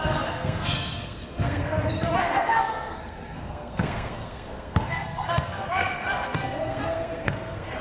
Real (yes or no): no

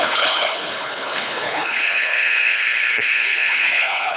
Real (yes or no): no